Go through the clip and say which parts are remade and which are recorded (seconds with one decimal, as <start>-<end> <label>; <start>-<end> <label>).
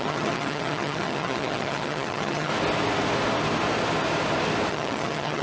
0.0-2.5 remade; 2.5-4.7 recorded; 4.7-5.4 remade